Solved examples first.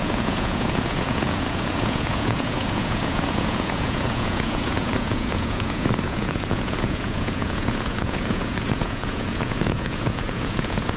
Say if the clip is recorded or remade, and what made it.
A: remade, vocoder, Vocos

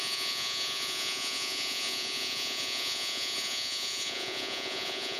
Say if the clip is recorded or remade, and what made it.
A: remade, vocoder, Vocos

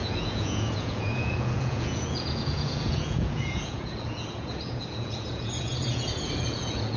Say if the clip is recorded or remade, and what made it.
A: remade, vocoder, Vocos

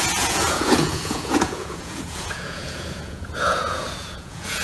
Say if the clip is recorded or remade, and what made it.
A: remade, vocoder, Vocos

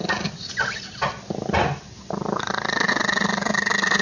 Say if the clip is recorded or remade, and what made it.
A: recorded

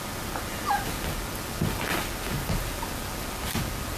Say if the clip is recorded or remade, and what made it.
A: recorded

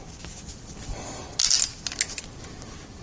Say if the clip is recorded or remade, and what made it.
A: recorded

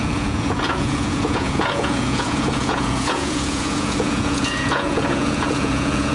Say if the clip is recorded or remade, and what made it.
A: remade, vocoder, Vocos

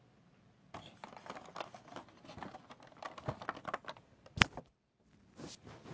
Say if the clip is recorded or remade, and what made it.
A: recorded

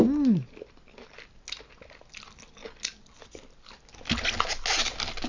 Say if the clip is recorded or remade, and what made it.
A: recorded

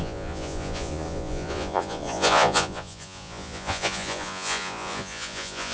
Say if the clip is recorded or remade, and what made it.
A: remade, vocoder, Vocos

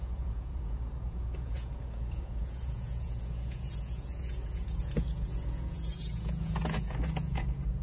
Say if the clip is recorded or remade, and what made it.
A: remade, vocoder, Vocos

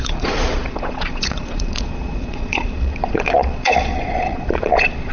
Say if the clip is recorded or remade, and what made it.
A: remade, vocoder, Vocos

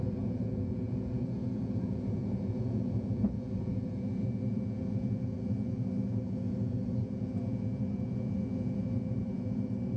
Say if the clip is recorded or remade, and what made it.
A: remade, vocoder, Vocos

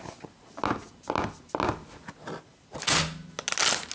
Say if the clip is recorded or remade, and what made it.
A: recorded